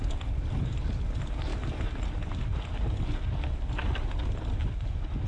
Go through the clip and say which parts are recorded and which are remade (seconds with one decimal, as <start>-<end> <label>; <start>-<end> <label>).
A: 0.0-5.3 recorded